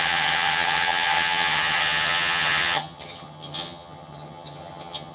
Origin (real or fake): fake